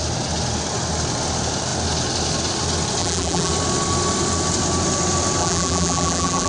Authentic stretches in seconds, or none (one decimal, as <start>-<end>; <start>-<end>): 0.0-3.0; 3.5-5.4